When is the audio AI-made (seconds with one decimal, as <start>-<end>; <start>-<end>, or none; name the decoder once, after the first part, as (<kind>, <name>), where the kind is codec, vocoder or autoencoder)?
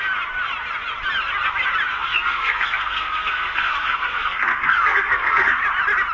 1.9-5.6 (codec, SNAC)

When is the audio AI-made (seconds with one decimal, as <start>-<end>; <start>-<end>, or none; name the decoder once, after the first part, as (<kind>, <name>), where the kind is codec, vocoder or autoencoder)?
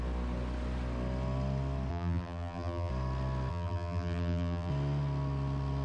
1.9-2.9 (vocoder, BigVGAN v2); 3.5-4.7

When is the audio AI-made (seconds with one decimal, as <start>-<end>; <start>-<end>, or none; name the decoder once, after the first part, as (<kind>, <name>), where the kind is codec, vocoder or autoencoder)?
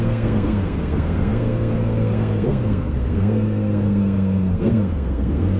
0.0-5.6 (codec, SNAC)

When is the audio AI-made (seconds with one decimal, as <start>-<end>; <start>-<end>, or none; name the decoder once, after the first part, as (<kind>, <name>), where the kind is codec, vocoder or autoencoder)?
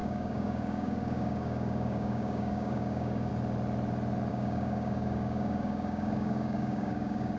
0.0-3.3 (codec, DAC); 4.3-7.4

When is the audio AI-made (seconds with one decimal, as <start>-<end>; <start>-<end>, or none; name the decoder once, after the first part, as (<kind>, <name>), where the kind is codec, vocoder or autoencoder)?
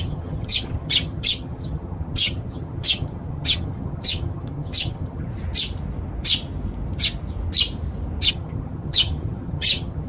0.0-5.3 (vocoder, HiFi-GAN); 8.3-10.1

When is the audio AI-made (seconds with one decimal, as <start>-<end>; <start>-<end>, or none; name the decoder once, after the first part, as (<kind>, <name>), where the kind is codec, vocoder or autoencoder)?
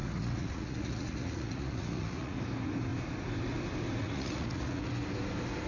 0.0-2.4 (vocoder, Vocos); 4.0-4.9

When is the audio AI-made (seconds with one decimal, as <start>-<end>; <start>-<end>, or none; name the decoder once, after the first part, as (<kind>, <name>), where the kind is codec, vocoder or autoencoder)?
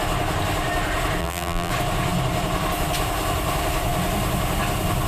1.2-1.7 (vocoder, BigVGAN v2)